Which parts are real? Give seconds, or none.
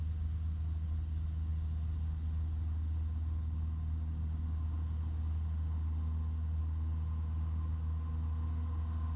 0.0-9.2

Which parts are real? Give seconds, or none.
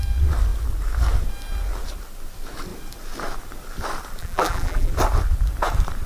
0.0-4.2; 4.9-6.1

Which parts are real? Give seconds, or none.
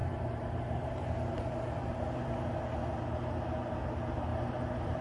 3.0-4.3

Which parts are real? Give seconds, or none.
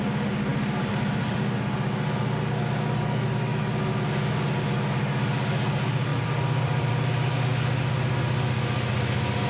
0.0-0.5; 1.5-6.1; 6.9-9.5